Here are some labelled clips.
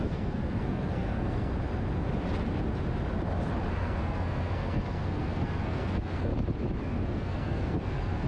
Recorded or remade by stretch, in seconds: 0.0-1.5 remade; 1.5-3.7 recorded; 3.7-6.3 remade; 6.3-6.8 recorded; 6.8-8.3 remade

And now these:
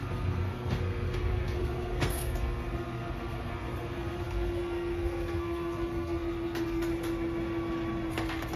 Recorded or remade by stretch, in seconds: 0.0-6.9 remade; 6.9-8.1 recorded; 8.1-8.6 remade

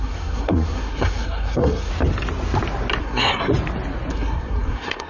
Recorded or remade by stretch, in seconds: 0.0-1.9 remade; 1.9-3.0 recorded; 3.0-3.5 remade; 3.5-4.1 recorded; 4.1-5.1 remade

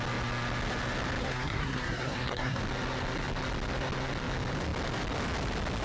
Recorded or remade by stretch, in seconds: 0.0-1.2 recorded; 1.2-2.6 remade; 2.6-5.8 recorded

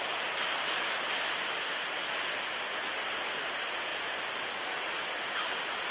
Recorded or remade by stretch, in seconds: 0.0-5.9 recorded

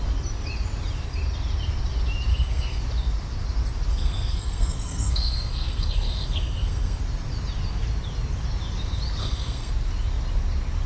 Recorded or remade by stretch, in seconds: 0.0-2.3 recorded; 2.3-2.8 remade; 2.8-3.9 recorded; 3.9-7.0 remade; 7.0-9.2 recorded; 9.2-9.7 remade; 9.7-10.9 recorded